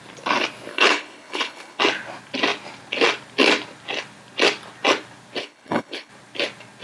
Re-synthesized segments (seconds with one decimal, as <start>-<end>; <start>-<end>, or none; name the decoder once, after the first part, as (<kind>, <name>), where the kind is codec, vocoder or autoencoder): 0.7-1.8 (codec, HILCodec); 5.4-6.1